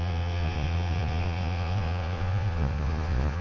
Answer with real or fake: fake